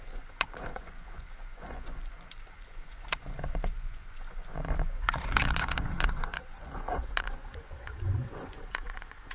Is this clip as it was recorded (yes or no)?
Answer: no